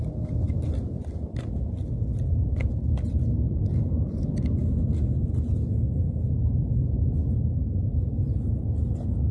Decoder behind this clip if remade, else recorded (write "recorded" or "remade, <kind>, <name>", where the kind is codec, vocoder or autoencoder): recorded